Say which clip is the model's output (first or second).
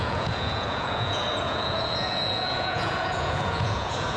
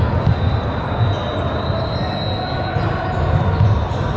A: first